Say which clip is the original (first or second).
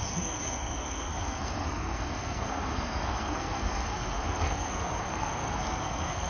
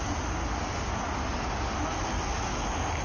second